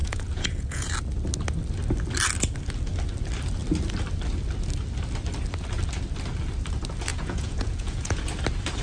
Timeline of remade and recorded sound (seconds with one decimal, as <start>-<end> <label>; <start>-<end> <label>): 0.0-0.9 remade; 0.9-7.1 recorded; 7.1-8.2 remade; 8.2-8.8 recorded